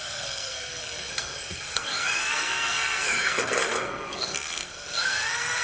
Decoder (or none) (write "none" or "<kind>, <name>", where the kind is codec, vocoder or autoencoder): codec, SNAC